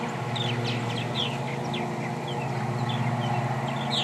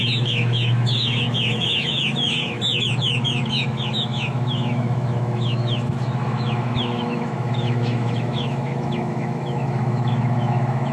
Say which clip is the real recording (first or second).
first